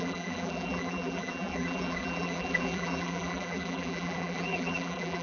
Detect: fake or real fake